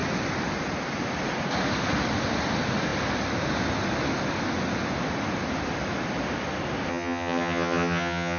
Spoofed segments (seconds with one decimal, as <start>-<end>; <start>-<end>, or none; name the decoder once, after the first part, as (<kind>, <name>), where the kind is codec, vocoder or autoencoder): 6.9-8.4 (vocoder, HiFi-GAN)